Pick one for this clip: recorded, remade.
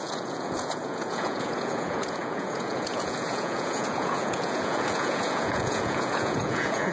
remade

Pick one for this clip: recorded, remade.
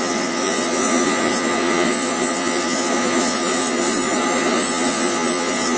remade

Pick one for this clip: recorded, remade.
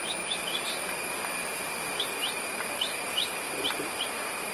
recorded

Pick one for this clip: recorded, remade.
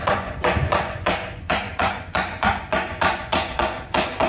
remade